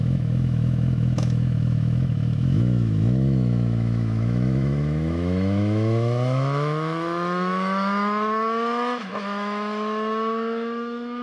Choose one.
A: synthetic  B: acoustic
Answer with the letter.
A